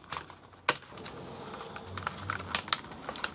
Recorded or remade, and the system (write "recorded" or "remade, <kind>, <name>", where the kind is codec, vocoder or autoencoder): recorded